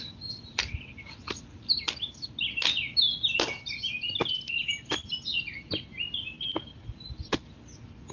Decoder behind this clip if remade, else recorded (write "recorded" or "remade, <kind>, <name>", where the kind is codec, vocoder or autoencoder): recorded